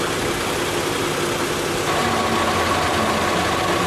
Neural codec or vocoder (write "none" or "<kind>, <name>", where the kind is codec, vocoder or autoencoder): none